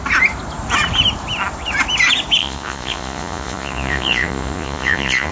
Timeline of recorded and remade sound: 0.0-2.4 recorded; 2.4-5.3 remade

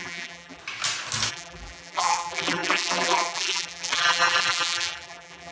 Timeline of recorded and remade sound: 0.0-0.6 remade; 0.6-1.3 recorded; 1.3-5.5 remade

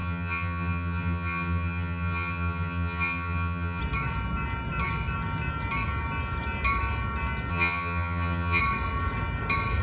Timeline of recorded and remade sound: 0.0-3.8 remade; 3.8-7.5 recorded; 7.5-8.6 remade; 8.6-9.8 recorded

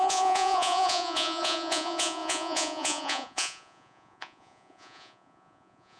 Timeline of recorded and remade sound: 0.0-6.0 remade

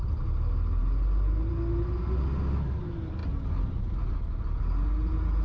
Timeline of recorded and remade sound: 0.0-5.4 recorded

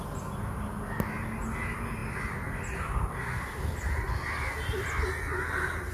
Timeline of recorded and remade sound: 0.0-5.9 recorded